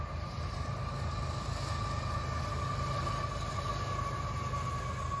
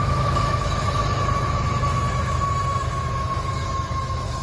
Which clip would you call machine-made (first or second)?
second